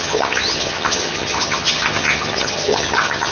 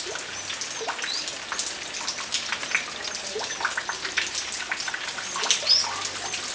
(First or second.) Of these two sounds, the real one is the second